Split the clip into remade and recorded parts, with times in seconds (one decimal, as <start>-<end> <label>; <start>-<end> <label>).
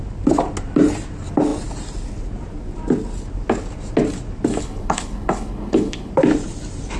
0.0-4.5 recorded; 4.5-6.1 remade; 6.1-7.0 recorded